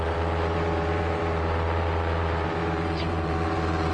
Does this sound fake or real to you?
fake